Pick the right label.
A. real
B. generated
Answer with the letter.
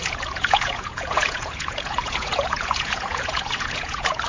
B